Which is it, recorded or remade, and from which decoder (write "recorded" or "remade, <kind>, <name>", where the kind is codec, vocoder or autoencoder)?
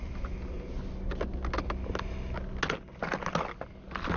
recorded